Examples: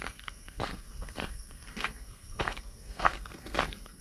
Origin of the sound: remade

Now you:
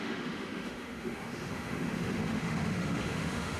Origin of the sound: remade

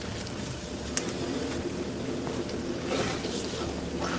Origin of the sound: recorded